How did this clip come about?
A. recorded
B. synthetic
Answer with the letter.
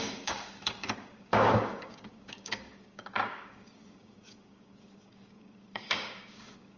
B